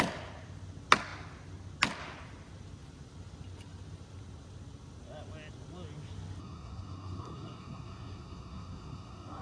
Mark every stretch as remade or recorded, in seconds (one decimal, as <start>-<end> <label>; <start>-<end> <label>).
0.0-6.4 recorded; 6.4-9.4 remade